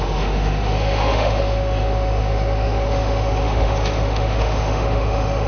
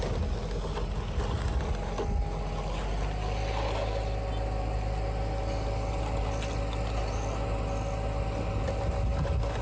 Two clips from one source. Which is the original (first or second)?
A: second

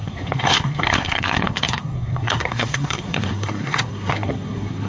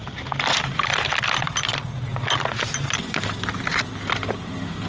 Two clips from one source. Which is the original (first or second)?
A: second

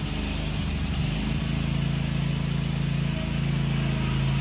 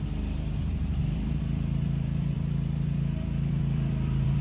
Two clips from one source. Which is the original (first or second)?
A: first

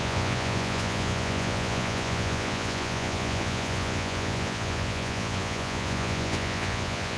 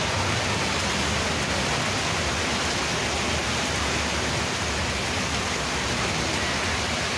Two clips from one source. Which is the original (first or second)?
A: second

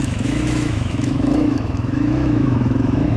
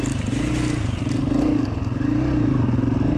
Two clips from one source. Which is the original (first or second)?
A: second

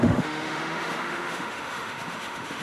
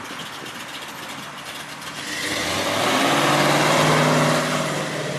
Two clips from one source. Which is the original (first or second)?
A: second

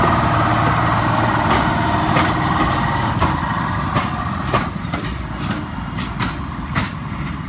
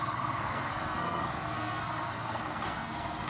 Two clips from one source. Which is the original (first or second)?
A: first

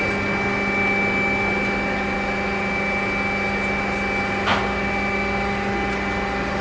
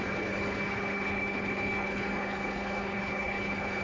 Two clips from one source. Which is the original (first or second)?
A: first